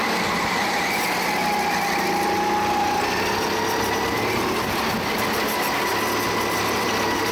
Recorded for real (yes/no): yes